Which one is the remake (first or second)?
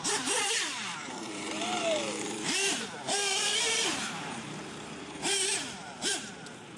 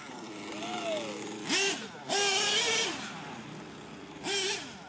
first